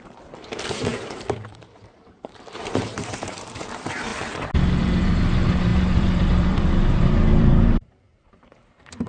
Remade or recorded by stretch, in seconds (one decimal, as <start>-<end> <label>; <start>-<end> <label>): 0.0-4.1 remade; 4.1-4.8 recorded; 4.8-9.1 remade